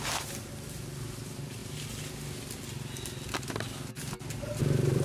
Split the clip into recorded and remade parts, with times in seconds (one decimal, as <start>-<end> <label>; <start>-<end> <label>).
0.0-1.6 remade; 1.6-4.6 recorded; 4.6-5.0 remade